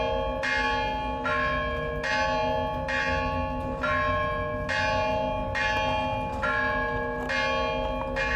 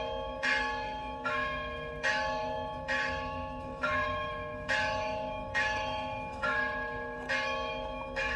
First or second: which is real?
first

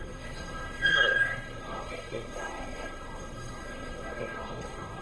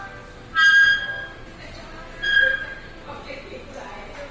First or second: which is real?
second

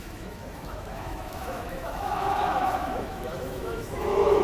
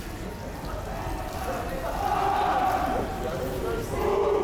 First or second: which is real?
second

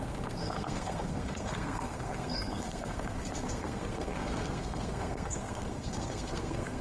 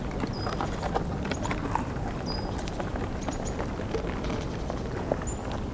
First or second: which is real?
second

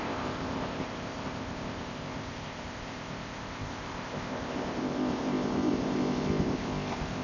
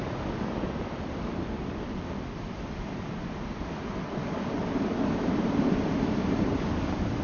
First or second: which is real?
second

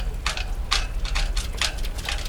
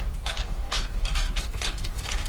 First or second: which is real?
first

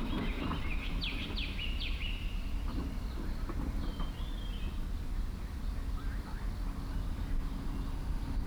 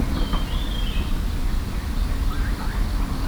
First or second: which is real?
first